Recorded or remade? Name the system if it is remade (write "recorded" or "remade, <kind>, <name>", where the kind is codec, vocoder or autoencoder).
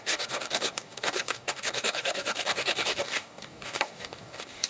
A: remade, codec, DAC